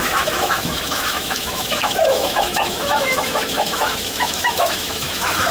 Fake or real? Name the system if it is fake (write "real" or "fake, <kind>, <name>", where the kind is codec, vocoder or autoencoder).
fake, autoencoder, DAC-VAE